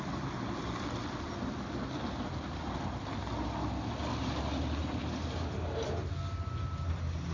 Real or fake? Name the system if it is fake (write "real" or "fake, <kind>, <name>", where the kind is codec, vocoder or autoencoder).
real